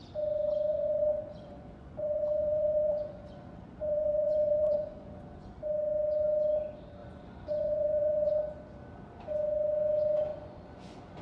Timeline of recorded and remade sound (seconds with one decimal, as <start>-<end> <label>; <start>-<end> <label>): 0.0-0.7 recorded; 0.7-5.6 remade; 5.6-7.0 recorded; 7.0-8.3 remade; 8.3-10.3 recorded; 10.3-11.2 remade